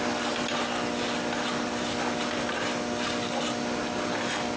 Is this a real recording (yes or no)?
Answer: yes